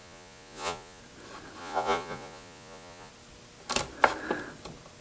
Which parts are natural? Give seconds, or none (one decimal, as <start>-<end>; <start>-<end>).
1.0-1.6; 3.1-5.0